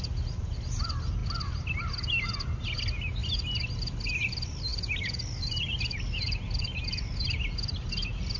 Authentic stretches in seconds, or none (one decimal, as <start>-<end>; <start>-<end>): 0.0-8.4